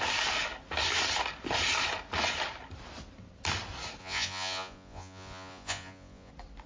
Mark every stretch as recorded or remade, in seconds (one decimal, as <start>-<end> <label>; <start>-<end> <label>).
0.0-4.0 recorded; 4.0-6.3 remade; 6.3-6.7 recorded